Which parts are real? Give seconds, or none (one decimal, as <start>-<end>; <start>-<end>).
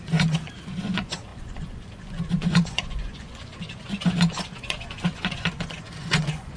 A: none